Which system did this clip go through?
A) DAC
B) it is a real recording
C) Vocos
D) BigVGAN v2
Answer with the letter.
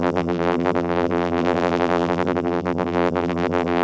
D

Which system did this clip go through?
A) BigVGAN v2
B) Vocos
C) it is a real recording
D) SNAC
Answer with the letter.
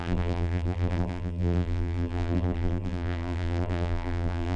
A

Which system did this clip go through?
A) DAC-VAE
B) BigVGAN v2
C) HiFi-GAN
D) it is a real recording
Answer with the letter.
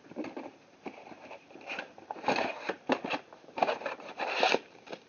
B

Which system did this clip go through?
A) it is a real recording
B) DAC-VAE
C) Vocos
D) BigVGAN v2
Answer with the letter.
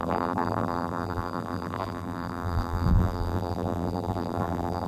D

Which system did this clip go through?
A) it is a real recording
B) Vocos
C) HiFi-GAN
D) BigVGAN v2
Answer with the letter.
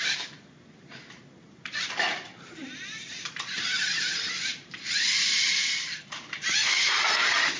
D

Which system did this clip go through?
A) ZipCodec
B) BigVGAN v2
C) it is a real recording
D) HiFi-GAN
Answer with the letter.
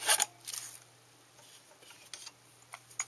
C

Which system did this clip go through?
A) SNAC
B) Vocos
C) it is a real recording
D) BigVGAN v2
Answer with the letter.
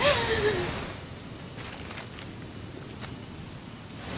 C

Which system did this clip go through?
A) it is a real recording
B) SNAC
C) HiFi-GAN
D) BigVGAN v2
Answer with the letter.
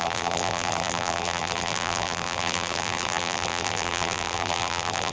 D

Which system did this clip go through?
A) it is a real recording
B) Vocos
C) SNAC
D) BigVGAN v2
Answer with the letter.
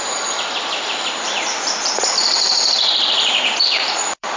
D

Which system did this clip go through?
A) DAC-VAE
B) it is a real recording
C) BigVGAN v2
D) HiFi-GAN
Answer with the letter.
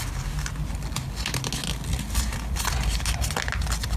B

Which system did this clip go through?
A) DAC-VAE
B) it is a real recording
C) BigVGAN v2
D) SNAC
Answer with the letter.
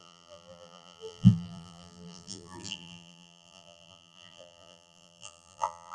C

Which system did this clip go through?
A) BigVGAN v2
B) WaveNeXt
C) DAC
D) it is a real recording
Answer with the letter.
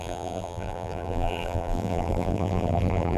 A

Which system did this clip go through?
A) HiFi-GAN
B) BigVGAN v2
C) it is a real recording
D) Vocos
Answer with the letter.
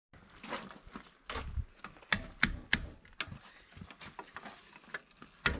C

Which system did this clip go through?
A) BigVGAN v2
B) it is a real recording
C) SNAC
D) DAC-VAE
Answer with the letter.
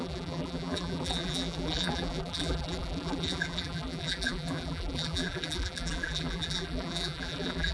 A